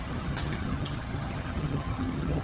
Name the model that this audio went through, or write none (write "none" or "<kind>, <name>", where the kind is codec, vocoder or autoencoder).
vocoder, HiFi-GAN